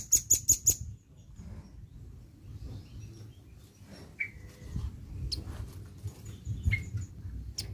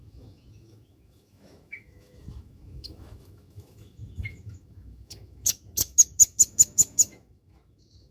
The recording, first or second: first